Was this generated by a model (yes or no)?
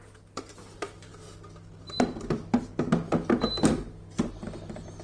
no